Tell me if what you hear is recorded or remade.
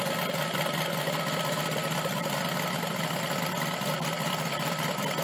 recorded